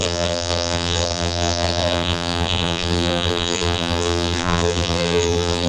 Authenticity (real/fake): fake